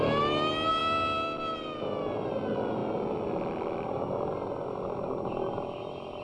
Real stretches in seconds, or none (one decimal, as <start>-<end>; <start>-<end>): 0.0-6.2